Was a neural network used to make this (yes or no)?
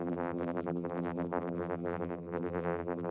yes